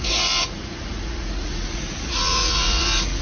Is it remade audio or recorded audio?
remade